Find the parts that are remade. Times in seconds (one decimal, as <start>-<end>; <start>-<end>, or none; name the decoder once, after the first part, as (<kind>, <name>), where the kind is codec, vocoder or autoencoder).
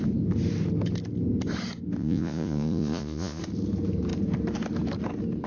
2.0-3.4 (vocoder, Vocos)